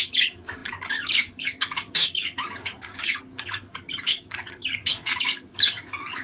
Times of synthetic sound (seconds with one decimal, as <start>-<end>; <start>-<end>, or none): 0.0-6.2